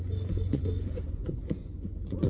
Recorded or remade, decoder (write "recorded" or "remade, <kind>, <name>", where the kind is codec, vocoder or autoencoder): remade, vocoder, Vocos